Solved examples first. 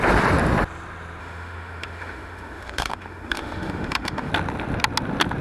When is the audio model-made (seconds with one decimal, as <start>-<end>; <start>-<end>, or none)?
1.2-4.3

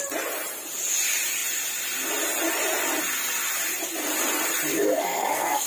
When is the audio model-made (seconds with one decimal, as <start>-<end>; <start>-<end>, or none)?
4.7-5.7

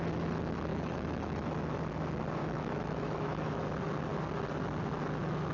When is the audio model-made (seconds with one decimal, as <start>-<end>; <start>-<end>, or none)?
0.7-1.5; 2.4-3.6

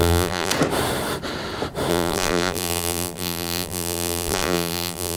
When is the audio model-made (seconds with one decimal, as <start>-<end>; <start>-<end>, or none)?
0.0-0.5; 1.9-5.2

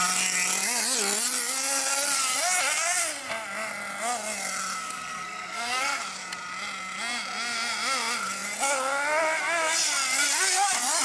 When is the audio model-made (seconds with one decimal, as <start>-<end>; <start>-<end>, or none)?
4.8-6.0